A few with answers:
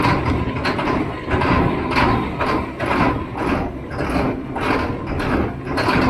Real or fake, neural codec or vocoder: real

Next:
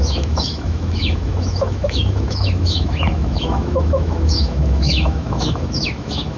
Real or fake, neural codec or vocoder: fake, autoencoder, DAC-VAE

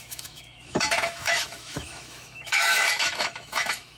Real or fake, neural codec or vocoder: fake, autoencoder, DAC-VAE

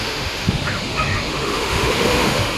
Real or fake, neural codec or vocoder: fake, autoencoder, DAC-VAE